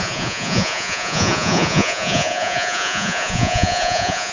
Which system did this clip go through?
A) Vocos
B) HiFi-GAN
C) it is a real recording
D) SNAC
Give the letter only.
A